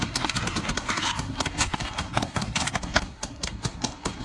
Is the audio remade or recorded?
remade